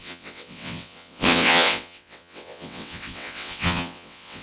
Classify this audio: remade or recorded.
remade